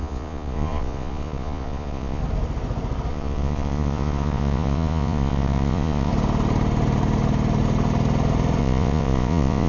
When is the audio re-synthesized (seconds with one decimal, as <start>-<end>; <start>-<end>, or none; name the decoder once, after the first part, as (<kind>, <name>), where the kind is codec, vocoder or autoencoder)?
0.0-2.2 (vocoder, Vocos); 3.1-6.1; 8.6-9.7